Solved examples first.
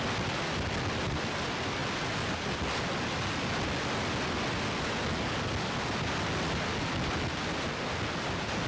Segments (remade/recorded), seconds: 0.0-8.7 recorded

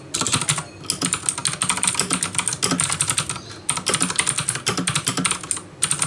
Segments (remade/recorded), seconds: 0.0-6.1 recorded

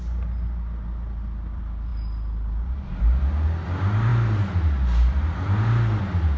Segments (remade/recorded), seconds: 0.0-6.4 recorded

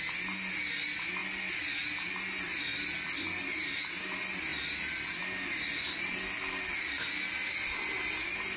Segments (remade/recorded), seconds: 0.0-8.6 recorded